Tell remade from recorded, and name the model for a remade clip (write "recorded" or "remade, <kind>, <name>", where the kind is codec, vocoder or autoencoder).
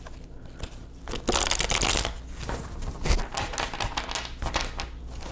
recorded